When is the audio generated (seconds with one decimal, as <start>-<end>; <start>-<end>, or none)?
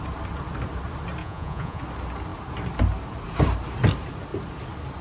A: 1.2-1.8